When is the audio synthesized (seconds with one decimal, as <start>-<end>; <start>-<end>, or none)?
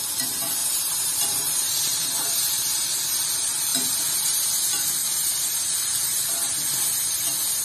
0.6-3.0; 3.7-4.6; 5.0-6.5